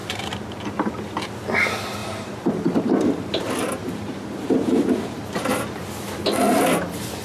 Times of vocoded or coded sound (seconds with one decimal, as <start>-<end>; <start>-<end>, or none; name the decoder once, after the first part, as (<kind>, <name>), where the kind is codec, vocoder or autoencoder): 0.0-0.9 (vocoder, BigVGAN v2); 2.0-3.4; 3.8-5.2